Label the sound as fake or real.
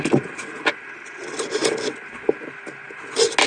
real